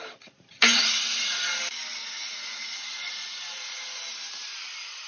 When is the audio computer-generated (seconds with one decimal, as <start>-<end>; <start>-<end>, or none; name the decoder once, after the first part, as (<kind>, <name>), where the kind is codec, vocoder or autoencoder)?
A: 0.7-1.6 (vocoder, Vocos); 2.0-4.0